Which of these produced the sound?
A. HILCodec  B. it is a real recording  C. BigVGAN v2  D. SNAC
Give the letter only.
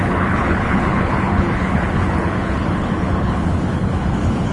A